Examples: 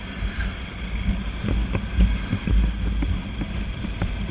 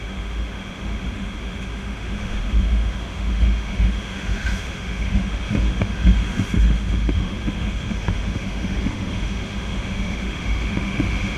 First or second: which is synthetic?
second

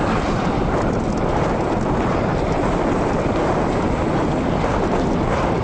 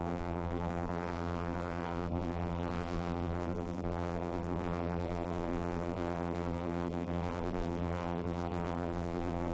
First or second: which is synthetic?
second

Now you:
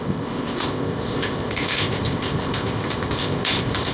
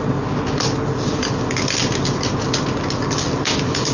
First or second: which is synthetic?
first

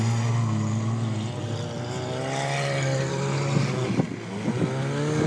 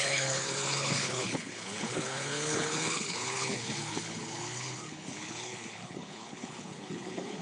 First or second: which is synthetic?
second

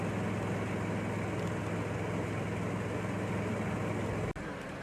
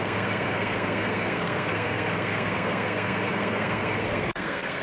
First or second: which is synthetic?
second